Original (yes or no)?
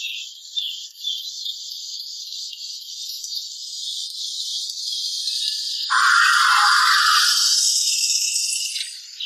yes